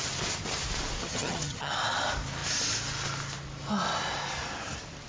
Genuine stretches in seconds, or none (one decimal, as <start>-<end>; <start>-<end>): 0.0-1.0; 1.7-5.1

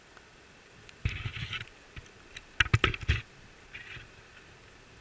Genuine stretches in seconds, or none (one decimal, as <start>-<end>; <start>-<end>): 0.0-5.0

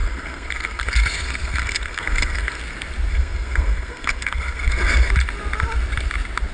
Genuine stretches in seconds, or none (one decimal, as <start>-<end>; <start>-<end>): 2.6-3.1; 5.1-6.5

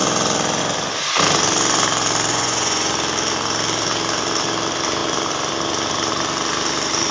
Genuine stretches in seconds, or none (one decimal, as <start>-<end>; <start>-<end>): 0.0-2.3; 2.9-7.1